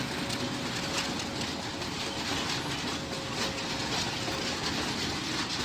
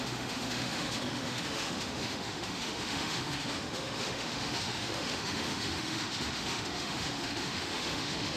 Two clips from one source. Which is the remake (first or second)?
second